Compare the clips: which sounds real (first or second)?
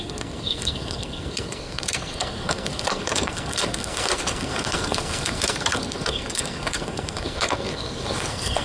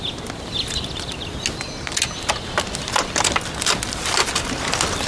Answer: second